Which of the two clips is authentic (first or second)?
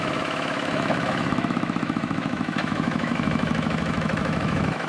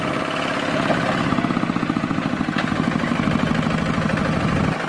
second